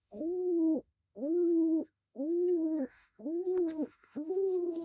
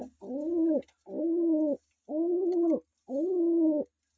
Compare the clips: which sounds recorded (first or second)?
second